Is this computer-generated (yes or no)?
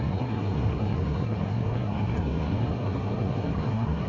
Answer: yes